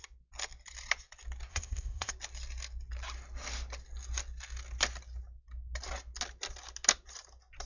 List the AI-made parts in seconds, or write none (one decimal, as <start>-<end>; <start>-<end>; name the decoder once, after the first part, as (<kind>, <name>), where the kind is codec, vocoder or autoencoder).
1.5-2.1 (codec, ZipCodec)